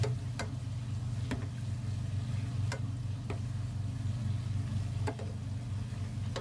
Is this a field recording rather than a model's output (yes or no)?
yes